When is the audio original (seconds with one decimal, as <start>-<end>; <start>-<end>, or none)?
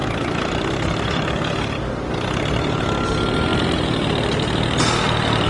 1.3-3.5; 4.1-5.5